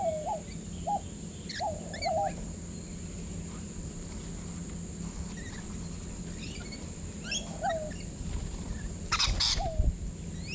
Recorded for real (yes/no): yes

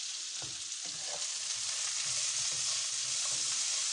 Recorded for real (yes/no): yes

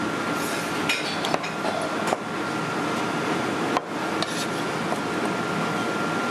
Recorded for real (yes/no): yes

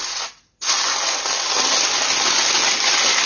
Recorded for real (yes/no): yes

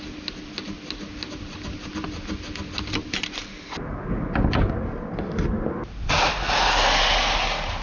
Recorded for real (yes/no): yes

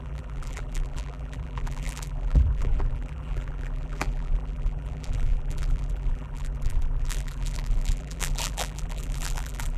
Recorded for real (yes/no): no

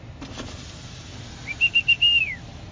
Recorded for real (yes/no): yes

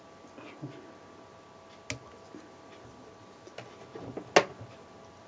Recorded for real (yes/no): yes